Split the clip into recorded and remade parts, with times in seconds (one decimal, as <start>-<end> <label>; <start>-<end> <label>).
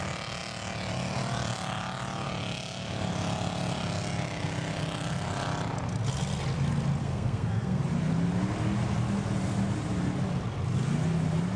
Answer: 0.0-7.0 recorded; 7.0-7.8 remade; 7.8-11.6 recorded